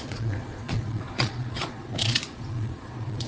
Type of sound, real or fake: fake